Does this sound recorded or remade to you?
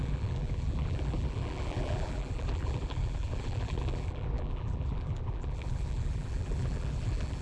remade